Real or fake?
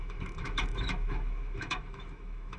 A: fake